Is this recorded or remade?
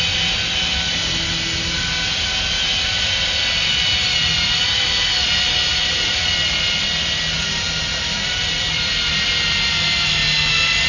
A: recorded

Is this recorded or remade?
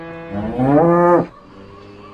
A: recorded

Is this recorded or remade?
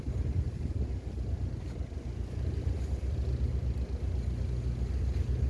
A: recorded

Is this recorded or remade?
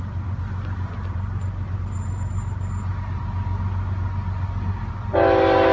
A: recorded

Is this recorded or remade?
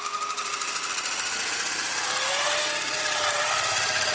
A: recorded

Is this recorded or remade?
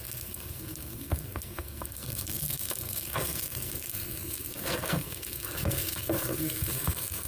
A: remade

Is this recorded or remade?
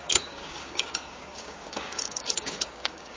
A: remade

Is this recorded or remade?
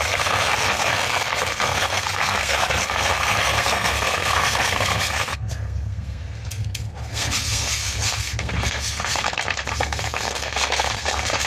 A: remade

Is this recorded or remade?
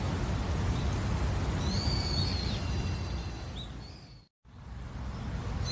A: recorded